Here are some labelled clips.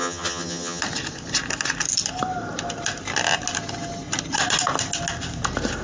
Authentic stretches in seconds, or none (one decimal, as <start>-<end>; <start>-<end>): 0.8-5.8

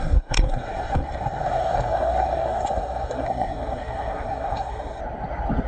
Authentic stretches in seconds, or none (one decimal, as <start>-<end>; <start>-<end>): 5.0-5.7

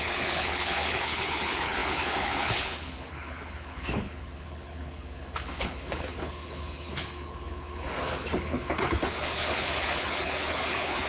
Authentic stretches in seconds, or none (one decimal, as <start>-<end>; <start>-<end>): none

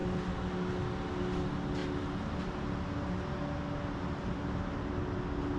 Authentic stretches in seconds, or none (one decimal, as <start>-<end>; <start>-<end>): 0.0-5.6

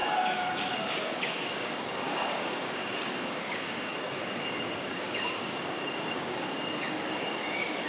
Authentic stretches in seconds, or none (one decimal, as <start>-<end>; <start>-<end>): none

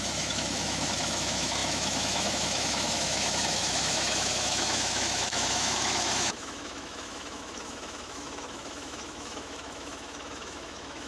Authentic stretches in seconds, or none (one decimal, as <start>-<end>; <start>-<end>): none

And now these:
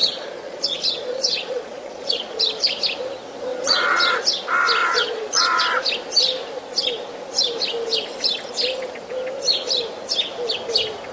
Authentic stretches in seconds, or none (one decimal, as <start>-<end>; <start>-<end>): 2.4-3.5; 4.2-4.8; 5.6-11.1